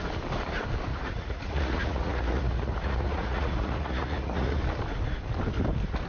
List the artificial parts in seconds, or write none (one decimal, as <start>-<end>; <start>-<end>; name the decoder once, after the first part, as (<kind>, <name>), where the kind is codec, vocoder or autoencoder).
0.9-4.6 (vocoder, Vocos)